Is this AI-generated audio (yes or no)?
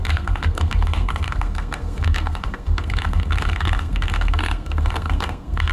yes